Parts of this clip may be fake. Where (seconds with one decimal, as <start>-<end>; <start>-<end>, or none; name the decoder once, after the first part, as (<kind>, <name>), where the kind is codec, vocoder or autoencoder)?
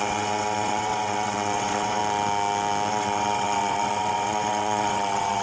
0.0-2.0 (vocoder, WaveNeXt); 2.9-5.4